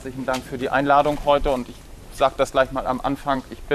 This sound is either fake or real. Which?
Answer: fake